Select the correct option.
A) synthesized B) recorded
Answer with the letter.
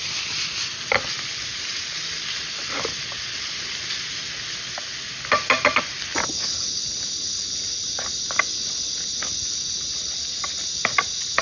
B